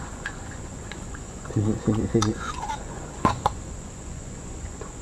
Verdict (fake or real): fake